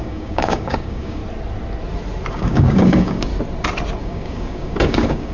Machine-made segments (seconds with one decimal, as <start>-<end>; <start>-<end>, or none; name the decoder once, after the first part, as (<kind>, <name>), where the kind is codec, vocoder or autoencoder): 0.0-1.2 (codec, DAC); 2.3-3.3; 4.0-5.3